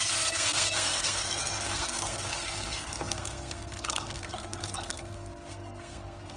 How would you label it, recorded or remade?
remade